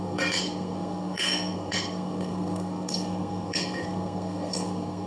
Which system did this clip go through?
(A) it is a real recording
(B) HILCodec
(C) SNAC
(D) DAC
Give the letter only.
C